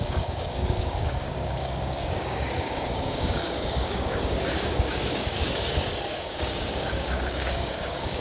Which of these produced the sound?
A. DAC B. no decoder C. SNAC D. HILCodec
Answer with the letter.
A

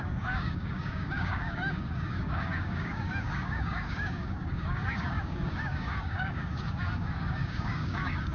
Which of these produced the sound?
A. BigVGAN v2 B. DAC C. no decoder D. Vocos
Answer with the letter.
B